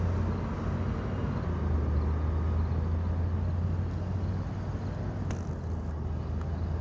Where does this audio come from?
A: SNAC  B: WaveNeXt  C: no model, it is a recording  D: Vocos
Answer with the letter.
C